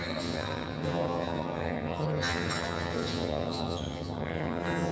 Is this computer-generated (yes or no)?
yes